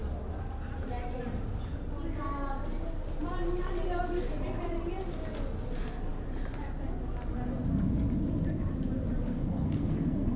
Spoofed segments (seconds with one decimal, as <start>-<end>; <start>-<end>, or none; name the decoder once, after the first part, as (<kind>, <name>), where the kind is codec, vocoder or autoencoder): 9.3-10.4 (codec, SNAC)